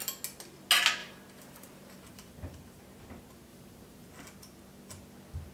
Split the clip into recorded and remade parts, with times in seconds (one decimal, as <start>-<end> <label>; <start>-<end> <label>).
0.0-1.0 recorded; 1.0-3.0 remade; 3.0-3.5 recorded; 3.5-4.1 remade; 4.1-5.5 recorded